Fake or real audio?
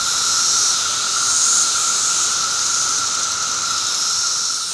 real